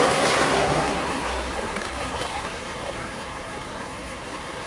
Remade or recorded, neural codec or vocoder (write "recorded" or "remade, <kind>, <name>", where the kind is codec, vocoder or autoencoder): remade, codec, SNAC